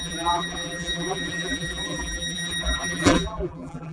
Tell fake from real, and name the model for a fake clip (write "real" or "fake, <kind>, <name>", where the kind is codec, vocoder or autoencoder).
fake, vocoder, BigVGAN v2